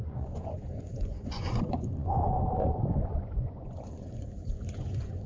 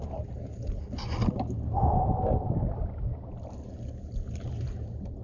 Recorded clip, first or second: second